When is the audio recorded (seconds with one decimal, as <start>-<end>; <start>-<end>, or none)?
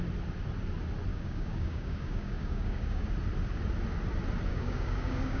0.0-1.1; 3.1-4.5